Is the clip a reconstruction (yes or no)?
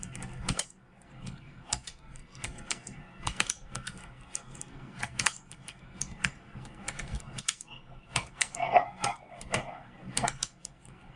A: yes